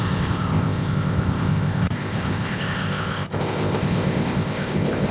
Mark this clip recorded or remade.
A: remade